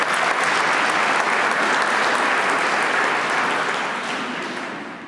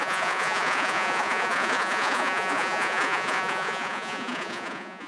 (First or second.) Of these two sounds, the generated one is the second